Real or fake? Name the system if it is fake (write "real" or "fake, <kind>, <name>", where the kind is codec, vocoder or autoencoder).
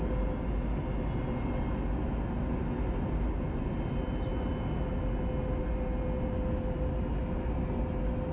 real